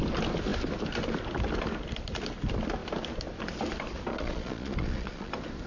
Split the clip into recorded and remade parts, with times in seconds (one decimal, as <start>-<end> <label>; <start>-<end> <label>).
0.0-4.1 recorded; 4.1-5.3 remade; 5.3-5.7 recorded